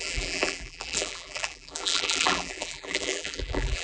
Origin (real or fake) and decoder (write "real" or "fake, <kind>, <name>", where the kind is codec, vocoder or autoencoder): fake, vocoder, BigVGAN v2